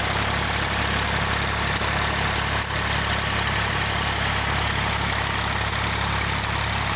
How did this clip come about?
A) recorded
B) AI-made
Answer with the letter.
A